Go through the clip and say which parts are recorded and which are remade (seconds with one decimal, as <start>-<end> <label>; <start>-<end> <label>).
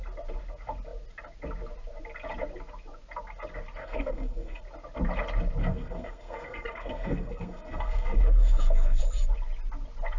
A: 0.0-3.8 recorded; 3.8-4.6 remade; 4.6-5.6 recorded; 5.6-9.0 remade; 9.0-10.2 recorded